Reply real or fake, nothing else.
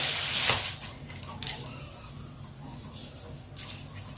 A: real